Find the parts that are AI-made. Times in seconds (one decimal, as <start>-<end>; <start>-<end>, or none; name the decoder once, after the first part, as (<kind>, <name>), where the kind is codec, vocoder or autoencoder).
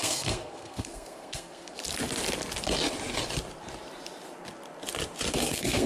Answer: 0.0-1.8 (codec, SNAC); 5.3-5.9